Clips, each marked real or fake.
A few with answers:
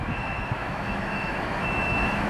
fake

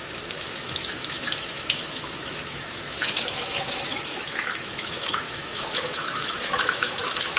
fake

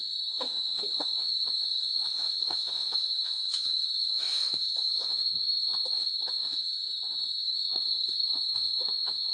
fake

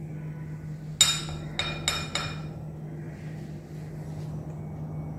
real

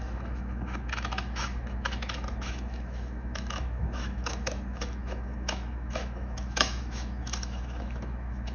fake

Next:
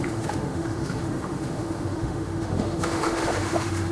fake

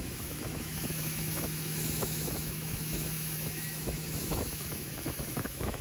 fake